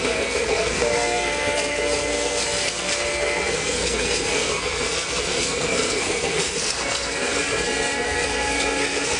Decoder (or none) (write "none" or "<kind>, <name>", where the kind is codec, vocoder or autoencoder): codec, SNAC